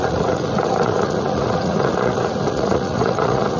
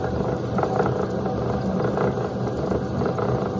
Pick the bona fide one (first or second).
second